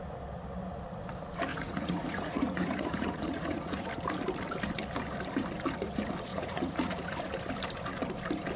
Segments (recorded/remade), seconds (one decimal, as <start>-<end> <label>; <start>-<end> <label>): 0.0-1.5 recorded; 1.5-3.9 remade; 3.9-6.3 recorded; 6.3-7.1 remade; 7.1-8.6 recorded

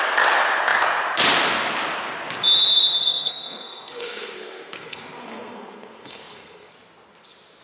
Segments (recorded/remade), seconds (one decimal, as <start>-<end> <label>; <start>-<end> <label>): 0.0-3.0 recorded; 3.0-6.7 remade; 6.7-7.6 recorded

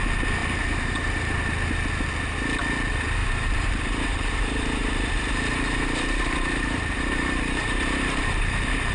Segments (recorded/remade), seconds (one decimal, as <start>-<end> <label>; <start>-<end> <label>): 0.0-0.4 recorded; 0.4-1.4 remade; 1.4-3.2 recorded; 3.2-7.0 remade; 7.0-7.6 recorded; 7.6-8.9 remade

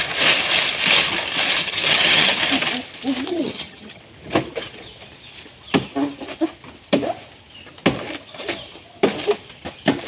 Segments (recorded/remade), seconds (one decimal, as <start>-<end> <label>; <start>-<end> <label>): 0.0-1.6 recorded; 1.6-2.4 remade; 2.4-3.3 recorded; 3.3-4.0 remade; 4.0-10.1 recorded

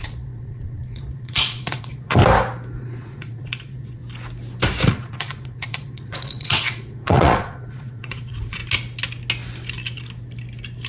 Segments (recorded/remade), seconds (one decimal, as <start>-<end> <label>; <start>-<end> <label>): 0.0-2.2 remade; 2.2-2.8 recorded; 2.8-4.0 remade; 4.0-4.9 recorded; 4.9-8.6 remade; 8.6-10.9 recorded

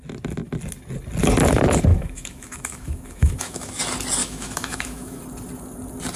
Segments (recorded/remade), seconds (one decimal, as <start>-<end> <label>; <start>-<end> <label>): 0.0-1.9 recorded; 1.9-3.8 remade; 3.8-4.2 recorded; 4.2-5.2 remade; 5.2-6.2 recorded

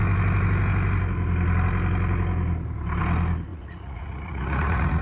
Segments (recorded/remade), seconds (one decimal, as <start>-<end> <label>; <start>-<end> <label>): 0.0-3.5 recorded; 3.5-5.0 remade

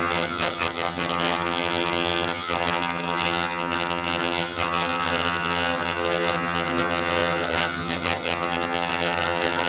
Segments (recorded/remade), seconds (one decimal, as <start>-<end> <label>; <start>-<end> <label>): 0.0-9.7 remade